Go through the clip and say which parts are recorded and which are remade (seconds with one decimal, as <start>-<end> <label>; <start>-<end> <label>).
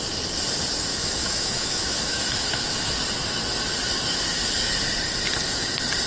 0.0-0.9 recorded; 0.9-2.9 remade; 2.9-6.1 recorded